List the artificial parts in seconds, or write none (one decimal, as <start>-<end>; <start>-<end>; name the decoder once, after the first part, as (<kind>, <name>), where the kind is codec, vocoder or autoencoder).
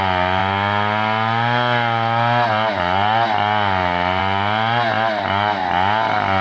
none